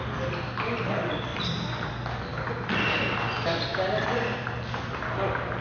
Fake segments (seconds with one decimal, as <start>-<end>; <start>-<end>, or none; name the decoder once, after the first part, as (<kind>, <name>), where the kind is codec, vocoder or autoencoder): none